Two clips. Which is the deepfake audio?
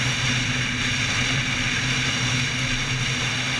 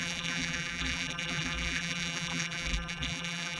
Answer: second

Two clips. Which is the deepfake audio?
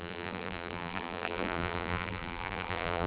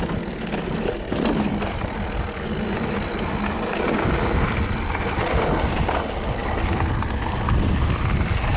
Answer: first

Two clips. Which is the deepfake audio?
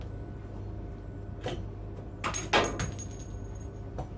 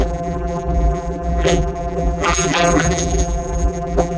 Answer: second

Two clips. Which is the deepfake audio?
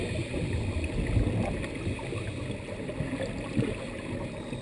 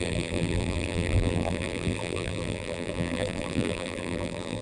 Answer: second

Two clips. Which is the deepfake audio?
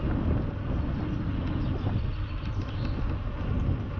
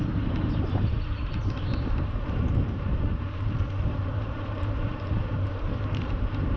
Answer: second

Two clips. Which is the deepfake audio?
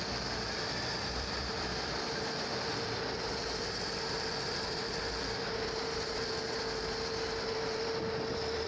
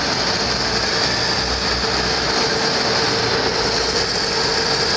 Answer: first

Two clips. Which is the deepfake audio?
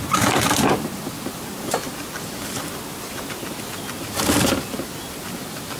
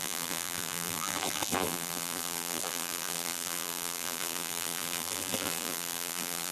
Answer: second